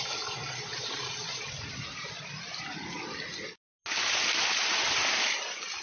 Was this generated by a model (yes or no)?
no